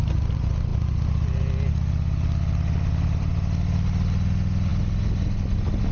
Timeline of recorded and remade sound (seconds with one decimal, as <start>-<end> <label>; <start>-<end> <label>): 0.0-5.9 recorded